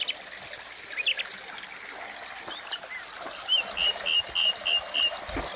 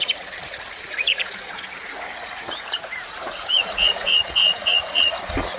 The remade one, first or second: second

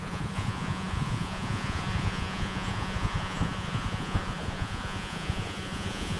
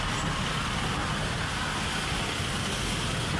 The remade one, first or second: first